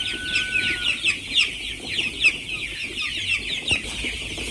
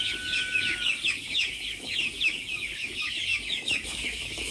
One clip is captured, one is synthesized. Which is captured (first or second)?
first